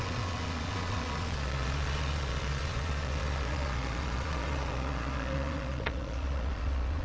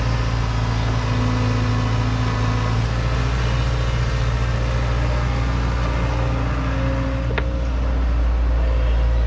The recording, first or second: second